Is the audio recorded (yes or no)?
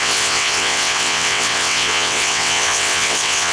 no